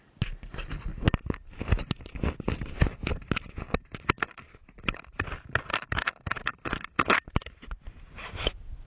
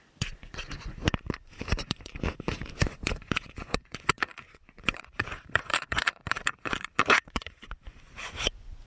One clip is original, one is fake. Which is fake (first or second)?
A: second